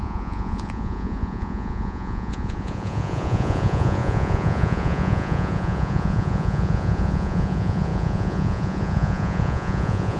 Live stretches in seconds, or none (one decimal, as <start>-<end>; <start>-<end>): none

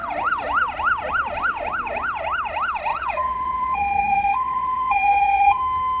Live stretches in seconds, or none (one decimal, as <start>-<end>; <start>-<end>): 0.0-2.9; 5.6-6.0

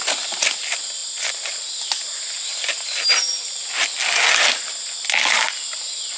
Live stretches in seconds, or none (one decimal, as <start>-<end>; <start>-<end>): 0.0-6.2

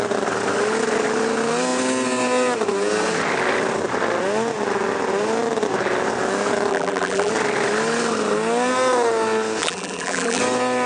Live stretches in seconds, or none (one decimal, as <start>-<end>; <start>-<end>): 0.0-6.7; 7.3-9.6; 10.4-10.9

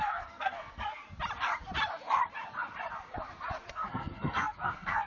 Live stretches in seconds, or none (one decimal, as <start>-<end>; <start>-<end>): 1.0-3.7

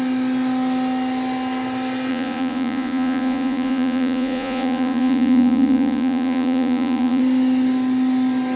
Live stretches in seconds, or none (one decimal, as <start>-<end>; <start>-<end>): 0.0-2.1; 7.2-8.6